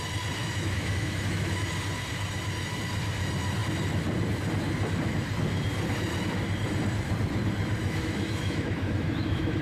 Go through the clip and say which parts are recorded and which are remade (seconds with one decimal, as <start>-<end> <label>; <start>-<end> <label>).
0.0-0.4 recorded; 0.4-1.7 remade; 1.7-7.8 recorded; 7.8-9.6 remade